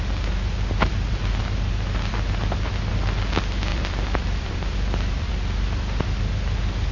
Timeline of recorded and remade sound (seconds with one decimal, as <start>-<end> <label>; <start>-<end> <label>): 0.0-0.9 recorded; 0.9-1.4 remade; 1.4-3.7 recorded; 3.7-5.3 remade; 5.3-6.9 recorded